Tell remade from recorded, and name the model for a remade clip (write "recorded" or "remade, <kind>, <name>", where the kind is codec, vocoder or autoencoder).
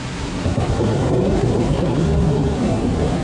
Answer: remade, codec, SNAC